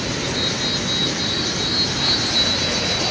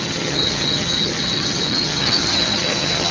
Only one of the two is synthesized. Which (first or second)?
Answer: second